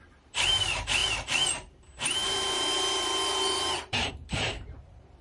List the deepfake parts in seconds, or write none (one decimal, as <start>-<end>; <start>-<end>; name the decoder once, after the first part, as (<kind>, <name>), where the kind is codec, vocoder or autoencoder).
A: 0.0-5.2 (vocoder, BigVGAN v2)